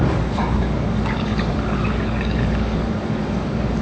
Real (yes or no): no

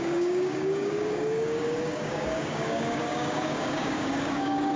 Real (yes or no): no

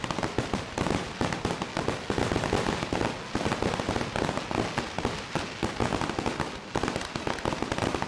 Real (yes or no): yes